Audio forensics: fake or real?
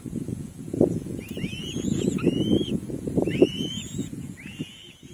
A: fake